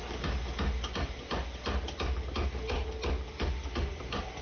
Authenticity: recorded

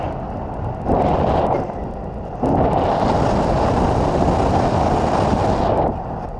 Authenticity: recorded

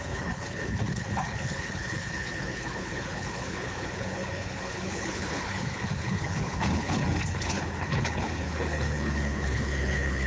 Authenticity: remade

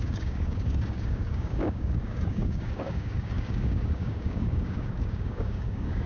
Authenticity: remade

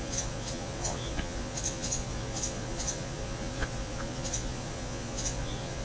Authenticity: remade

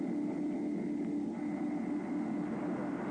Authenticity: recorded